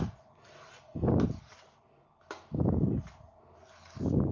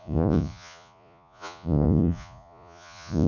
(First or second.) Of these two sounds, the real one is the first